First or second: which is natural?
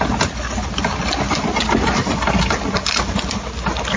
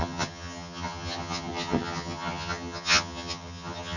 first